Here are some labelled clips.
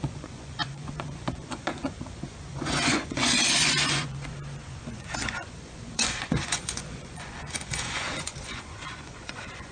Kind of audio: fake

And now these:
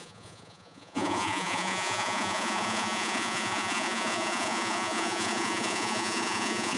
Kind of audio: fake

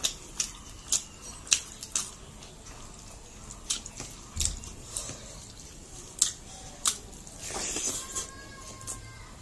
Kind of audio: real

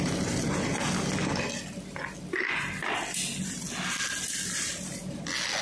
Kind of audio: real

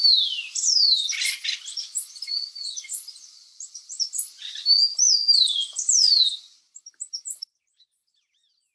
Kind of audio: real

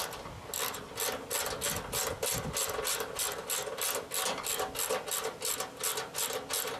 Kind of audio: real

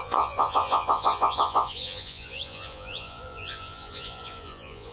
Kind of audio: fake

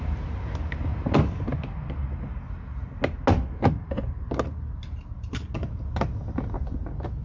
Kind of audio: real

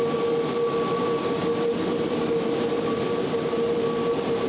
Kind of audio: real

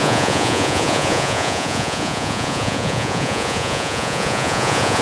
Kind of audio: fake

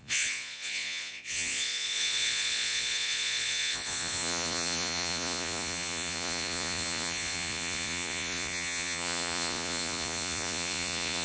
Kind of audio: fake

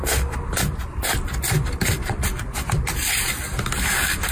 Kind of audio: real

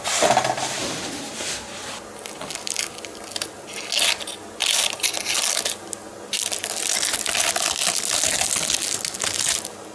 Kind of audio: real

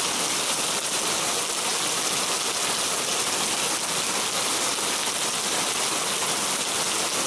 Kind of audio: real